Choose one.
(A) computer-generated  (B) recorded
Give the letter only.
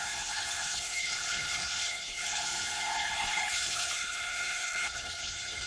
A